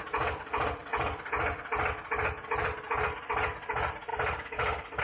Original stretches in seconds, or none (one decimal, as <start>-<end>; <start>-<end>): 0.0-5.0